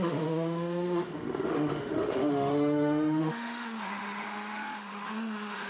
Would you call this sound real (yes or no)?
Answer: no